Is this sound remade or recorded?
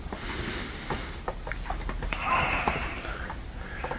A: recorded